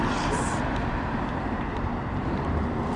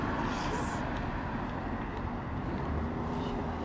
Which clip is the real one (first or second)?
second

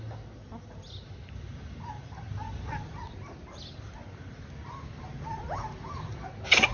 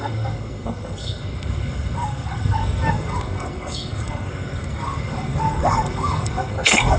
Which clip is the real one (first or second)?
first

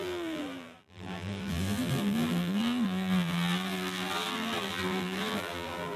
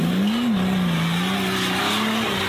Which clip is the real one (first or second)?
second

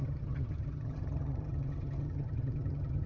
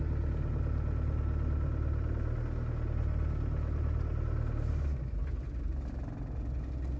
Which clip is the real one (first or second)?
second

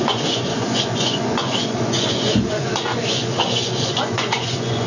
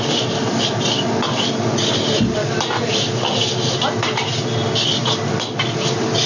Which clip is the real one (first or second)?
second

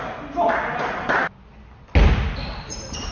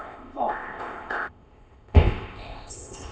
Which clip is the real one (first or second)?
first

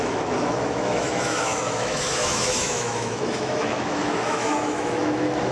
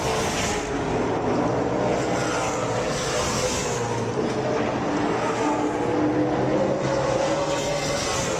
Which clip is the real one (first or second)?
second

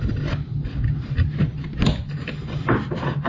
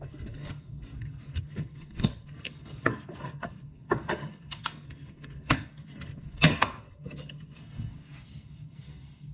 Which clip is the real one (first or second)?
first